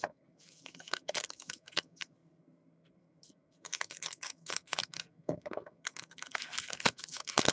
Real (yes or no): no